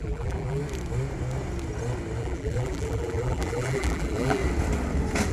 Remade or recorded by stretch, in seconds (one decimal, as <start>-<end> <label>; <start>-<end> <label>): 0.0-0.6 remade; 0.6-2.2 recorded; 2.2-4.4 remade; 4.4-5.3 recorded